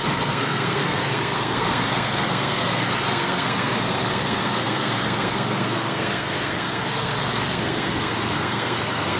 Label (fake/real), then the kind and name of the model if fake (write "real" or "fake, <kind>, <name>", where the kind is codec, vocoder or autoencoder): fake, codec, SNAC